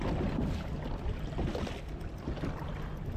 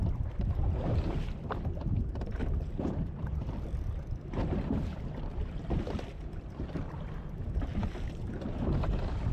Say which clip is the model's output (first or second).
second